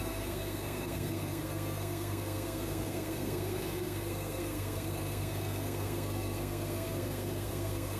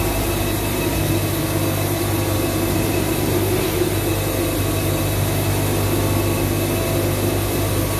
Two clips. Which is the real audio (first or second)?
second